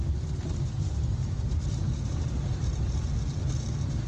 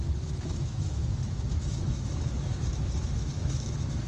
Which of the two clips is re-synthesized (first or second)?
second